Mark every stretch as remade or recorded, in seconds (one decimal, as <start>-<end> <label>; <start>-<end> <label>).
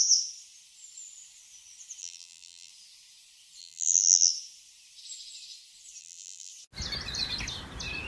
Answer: 0.0-2.0 recorded; 2.0-2.7 remade; 2.7-3.6 recorded; 3.6-4.3 remade; 4.3-6.0 recorded; 6.0-6.5 remade; 6.5-8.1 recorded